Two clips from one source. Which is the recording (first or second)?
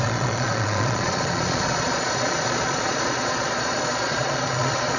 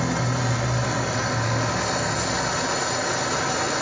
second